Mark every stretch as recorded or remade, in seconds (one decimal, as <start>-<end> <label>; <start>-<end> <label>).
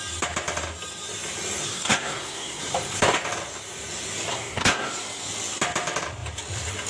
0.0-1.7 recorded; 1.7-2.6 remade; 2.6-4.3 recorded; 4.3-4.9 remade; 4.9-6.9 recorded